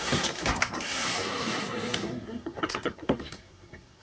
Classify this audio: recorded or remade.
remade